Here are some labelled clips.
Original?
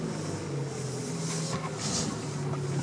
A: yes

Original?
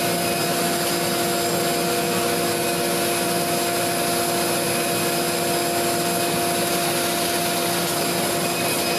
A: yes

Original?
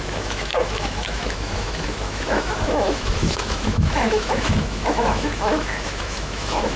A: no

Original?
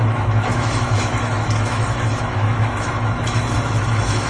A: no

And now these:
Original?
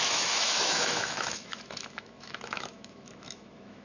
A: no